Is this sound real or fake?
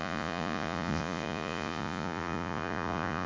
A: fake